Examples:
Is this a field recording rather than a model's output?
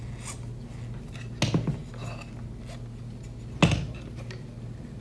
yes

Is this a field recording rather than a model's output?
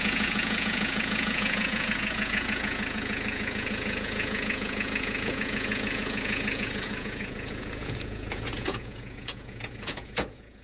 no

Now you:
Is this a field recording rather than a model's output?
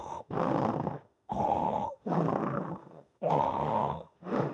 no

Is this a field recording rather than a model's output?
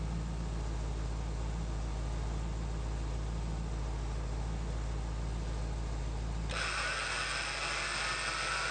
yes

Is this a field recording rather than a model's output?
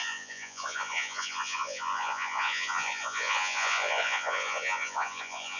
no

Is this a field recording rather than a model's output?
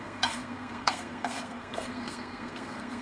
no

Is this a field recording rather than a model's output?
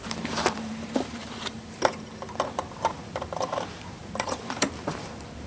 no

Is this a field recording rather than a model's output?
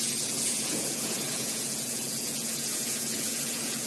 no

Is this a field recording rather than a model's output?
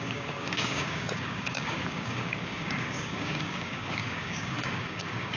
no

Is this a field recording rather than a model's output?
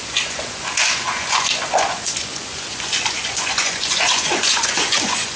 no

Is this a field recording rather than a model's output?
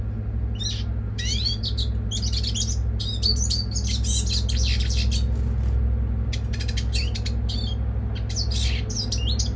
yes